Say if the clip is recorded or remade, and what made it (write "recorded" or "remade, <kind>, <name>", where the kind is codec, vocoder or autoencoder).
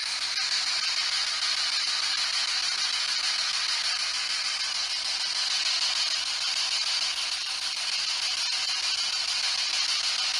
recorded